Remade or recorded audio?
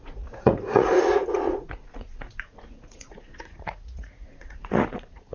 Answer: remade